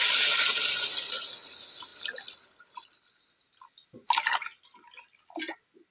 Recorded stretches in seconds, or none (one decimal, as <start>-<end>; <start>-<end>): 0.0-5.9